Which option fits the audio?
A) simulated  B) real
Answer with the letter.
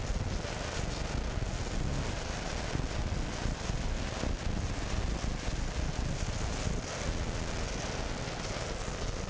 B